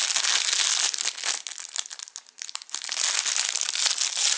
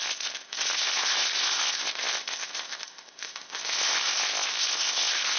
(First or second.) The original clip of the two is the first